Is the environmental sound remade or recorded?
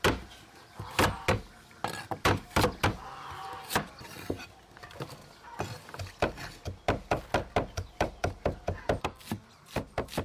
recorded